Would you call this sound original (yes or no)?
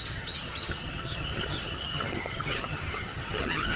no